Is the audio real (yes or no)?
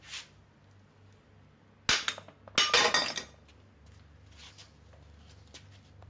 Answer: yes